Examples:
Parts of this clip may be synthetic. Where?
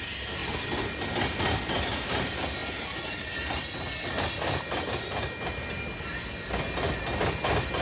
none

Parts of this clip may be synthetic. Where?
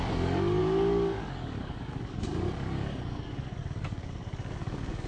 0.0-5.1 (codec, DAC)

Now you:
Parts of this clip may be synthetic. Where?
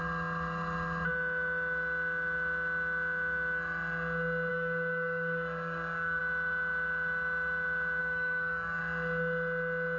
4.5-6.2 (codec, DAC); 8.0-8.8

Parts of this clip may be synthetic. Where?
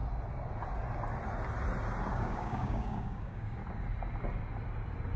2.1-3.6 (codec, DAC)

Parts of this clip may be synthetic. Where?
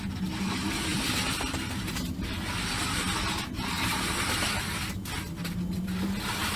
none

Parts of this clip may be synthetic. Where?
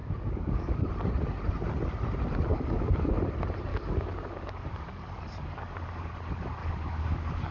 0.0-0.9 (codec, DAC); 2.5-3.2; 3.7-6.1; 6.6-7.5